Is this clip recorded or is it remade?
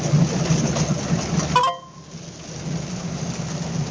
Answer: recorded